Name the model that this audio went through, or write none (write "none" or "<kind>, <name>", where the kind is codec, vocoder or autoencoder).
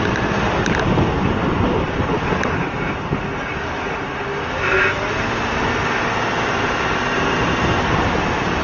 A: none